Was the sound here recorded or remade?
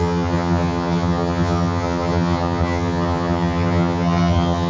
remade